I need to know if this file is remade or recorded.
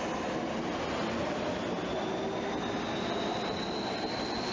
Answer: recorded